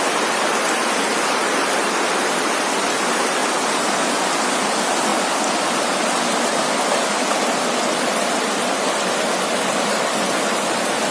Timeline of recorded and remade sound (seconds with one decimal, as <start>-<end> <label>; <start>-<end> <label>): 0.0-11.1 recorded

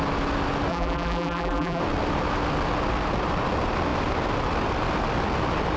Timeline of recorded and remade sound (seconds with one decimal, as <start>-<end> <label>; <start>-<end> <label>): 0.0-0.7 recorded; 0.7-1.8 remade; 1.8-5.8 recorded

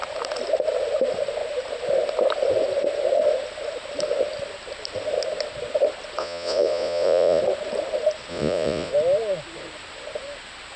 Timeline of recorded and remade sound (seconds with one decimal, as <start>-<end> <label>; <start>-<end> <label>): 0.0-6.2 recorded; 6.2-7.4 remade; 7.4-8.3 recorded; 8.3-8.9 remade; 8.9-10.8 recorded